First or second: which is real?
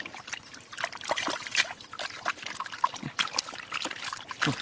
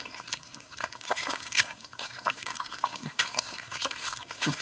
first